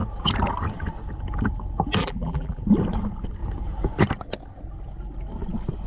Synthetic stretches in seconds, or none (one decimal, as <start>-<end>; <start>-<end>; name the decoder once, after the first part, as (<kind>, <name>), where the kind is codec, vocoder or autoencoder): 2.0-2.6 (vocoder, BigVGAN v2)